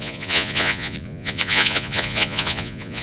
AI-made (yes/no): yes